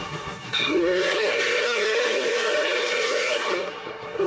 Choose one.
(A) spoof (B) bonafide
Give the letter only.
A